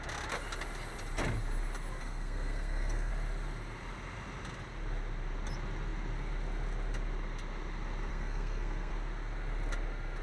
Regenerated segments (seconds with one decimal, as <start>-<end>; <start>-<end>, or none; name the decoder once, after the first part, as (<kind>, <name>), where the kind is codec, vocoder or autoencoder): 2.0-3.1 (codec, SNAC); 8.1-8.9